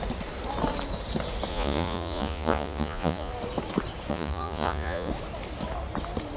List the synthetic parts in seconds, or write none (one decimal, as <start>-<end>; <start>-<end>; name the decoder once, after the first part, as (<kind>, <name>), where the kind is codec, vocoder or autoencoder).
1.5-3.3 (vocoder, Vocos); 4.1-5.1